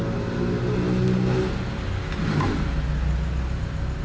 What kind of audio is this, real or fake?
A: real